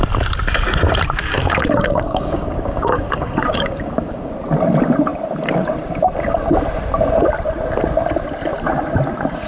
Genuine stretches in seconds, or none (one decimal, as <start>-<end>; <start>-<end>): 0.0-1.2; 4.3-9.5